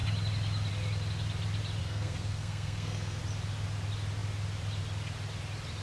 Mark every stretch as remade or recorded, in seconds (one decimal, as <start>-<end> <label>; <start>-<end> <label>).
0.0-1.8 recorded; 1.8-3.2 remade; 3.2-5.8 recorded